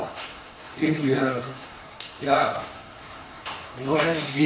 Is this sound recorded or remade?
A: remade